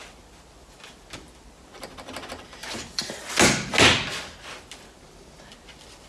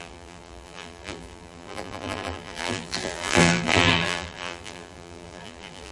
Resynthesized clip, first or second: second